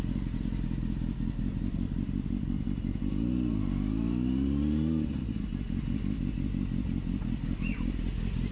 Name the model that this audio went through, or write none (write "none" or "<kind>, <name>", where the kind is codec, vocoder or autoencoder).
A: none